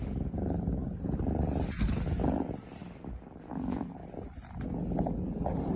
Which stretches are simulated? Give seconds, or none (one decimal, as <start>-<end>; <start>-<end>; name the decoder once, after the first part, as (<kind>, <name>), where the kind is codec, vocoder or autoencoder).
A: 4.0-4.5 (vocoder, BigVGAN v2)